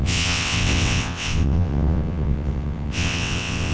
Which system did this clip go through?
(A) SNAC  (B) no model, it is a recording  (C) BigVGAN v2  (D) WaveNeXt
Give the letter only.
D